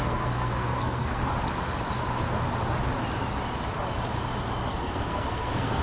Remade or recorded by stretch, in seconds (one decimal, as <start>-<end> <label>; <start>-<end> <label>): 0.0-1.2 remade; 1.2-4.7 recorded; 4.7-5.8 remade